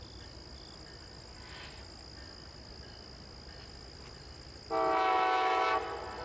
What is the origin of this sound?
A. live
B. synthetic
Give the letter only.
A